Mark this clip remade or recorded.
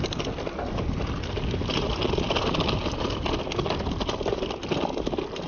recorded